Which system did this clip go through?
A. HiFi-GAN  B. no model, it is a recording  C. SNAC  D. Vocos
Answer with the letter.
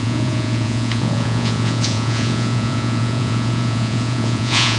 D